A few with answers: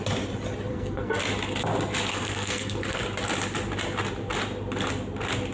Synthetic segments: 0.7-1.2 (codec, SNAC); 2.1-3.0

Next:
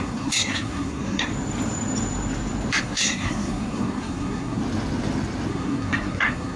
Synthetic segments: 0.0-1.3 (codec, SNAC); 2.8-4.6; 5.5-6.6

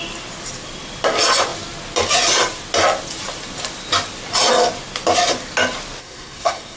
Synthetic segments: 6.0-6.8 (codec, SNAC)